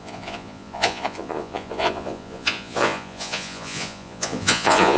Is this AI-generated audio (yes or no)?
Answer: yes